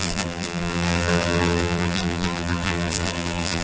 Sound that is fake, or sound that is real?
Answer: fake